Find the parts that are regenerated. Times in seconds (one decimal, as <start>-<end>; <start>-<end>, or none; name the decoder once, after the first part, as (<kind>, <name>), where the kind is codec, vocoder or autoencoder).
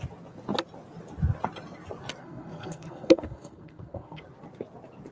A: 2.2-4.2 (codec, SNAC)